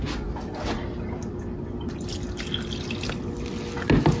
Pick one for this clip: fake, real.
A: real